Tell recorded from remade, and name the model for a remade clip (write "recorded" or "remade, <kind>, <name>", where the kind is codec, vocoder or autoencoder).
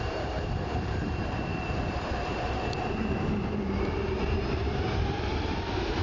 remade, vocoder, BigVGAN v2